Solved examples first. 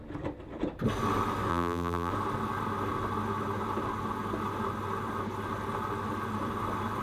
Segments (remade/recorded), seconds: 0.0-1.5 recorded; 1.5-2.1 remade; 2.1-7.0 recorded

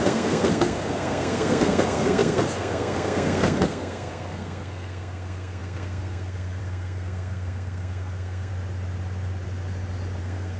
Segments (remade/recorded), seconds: 0.0-8.5 remade; 8.5-10.2 recorded; 10.2-10.6 remade

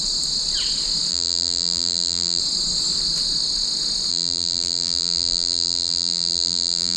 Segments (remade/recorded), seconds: 0.0-1.1 recorded; 1.1-2.4 remade; 2.4-4.1 recorded; 4.1-7.0 remade